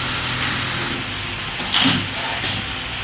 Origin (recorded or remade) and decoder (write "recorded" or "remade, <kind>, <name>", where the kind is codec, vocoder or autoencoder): recorded